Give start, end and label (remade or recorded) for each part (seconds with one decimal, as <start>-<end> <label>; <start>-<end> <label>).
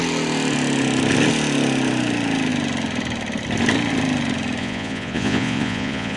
0.0-4.6 recorded; 4.6-6.2 remade